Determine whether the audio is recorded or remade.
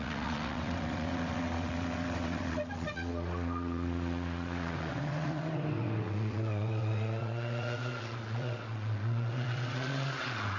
remade